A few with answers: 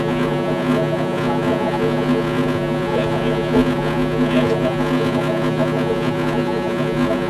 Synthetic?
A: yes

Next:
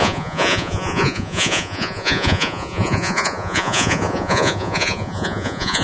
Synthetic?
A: yes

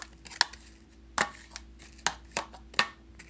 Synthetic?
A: no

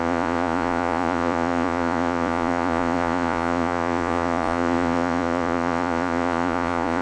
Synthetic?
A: yes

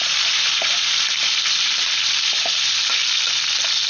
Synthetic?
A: no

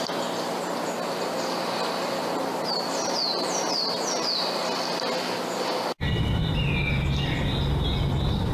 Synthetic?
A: no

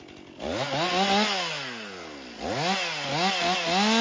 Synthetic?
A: no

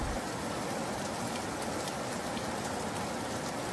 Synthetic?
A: no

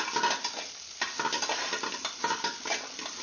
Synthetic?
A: no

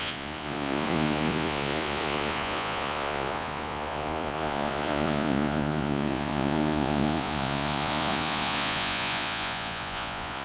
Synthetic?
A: yes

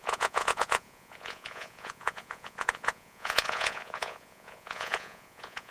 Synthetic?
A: yes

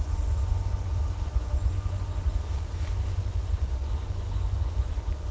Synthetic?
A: yes